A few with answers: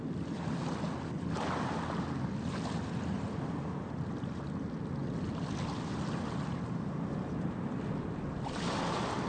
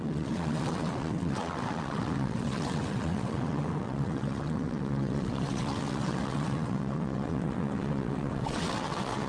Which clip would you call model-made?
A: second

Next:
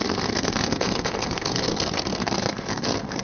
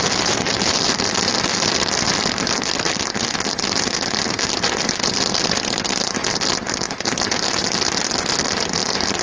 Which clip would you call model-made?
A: first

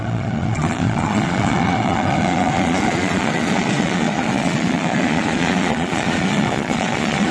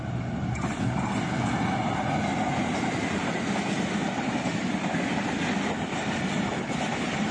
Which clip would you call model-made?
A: first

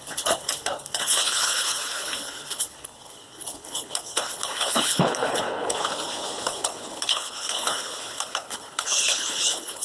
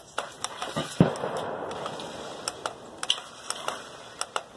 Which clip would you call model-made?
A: first